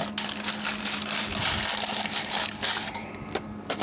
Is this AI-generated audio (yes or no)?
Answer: no